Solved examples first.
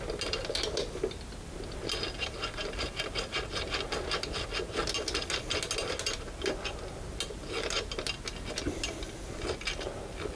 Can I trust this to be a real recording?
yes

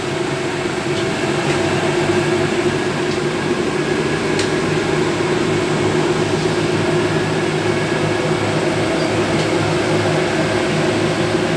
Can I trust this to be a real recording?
yes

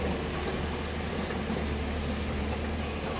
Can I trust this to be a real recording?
yes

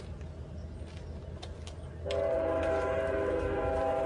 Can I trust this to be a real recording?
yes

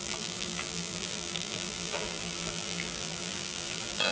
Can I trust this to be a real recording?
no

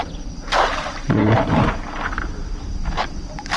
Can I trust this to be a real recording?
no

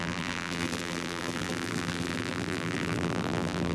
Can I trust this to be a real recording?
no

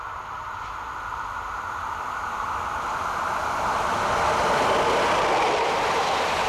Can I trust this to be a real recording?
no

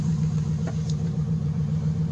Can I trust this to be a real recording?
no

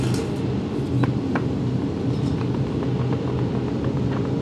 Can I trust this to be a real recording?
yes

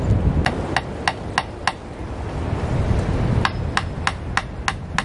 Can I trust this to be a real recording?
yes